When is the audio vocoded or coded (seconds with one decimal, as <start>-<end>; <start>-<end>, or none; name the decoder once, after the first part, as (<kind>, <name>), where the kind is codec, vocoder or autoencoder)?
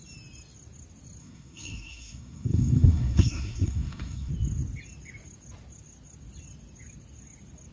1.2-4.3 (codec, SNAC)